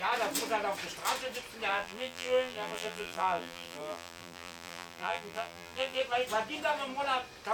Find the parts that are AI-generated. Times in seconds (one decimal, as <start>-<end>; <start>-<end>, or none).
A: 1.7-6.0